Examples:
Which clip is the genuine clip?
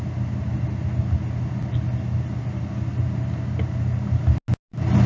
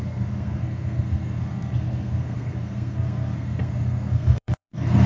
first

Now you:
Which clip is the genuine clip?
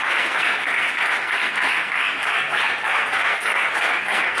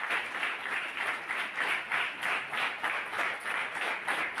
second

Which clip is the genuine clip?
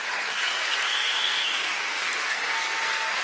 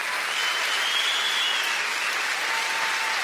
second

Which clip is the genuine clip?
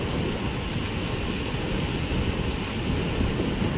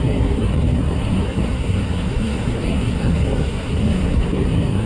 first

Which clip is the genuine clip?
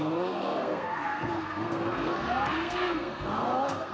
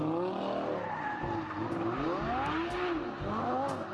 second